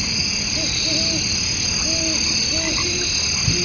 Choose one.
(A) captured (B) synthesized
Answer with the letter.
A